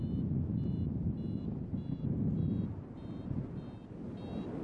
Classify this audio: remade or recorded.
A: recorded